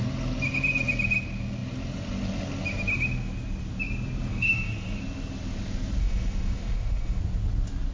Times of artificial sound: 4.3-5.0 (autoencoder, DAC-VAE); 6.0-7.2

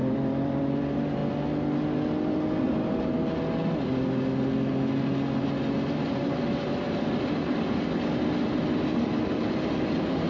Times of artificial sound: 0.0-1.2 (vocoder, BigVGAN v2); 5.0-10.3